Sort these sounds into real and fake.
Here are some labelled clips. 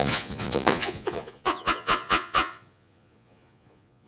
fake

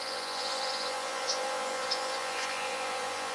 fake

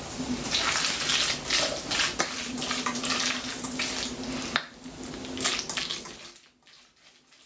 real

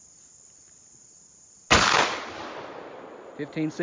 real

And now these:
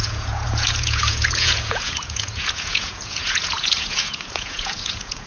fake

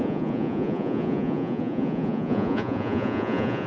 fake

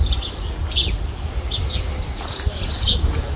real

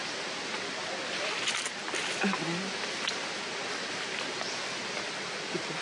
real